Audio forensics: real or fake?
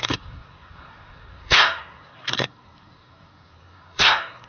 fake